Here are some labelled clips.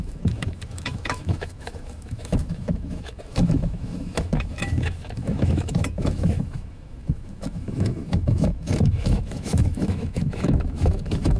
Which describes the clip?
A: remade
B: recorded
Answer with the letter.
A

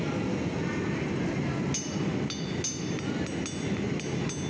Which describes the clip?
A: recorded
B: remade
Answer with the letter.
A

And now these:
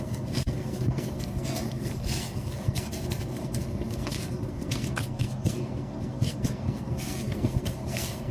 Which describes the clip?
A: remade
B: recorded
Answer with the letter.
A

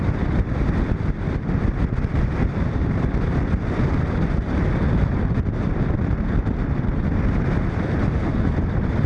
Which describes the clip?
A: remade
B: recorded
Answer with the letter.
A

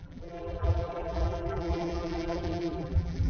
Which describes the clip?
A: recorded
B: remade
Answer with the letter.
B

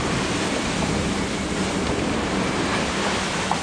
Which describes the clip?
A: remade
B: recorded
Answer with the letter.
B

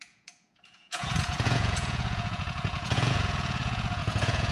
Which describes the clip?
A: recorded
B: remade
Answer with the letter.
B